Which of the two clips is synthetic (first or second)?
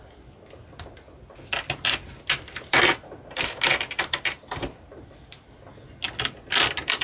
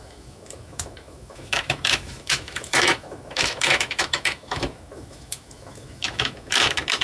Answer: second